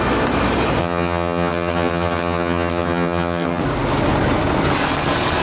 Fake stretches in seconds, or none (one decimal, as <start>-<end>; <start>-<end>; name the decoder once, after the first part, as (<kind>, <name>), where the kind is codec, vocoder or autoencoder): 0.8-3.6 (vocoder, HiFi-GAN)